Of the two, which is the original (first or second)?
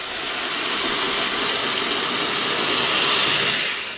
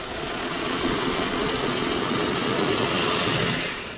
first